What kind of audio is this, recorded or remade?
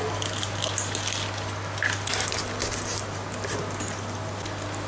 recorded